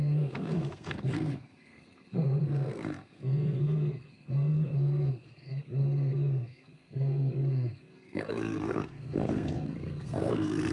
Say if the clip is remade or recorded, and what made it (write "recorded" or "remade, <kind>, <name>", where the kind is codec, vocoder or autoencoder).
remade, codec, SNAC